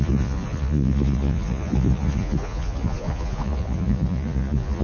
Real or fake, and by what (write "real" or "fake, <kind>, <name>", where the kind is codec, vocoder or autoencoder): fake, vocoder, Vocos